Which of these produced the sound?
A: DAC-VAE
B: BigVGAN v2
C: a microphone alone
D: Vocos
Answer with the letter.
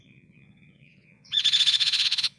D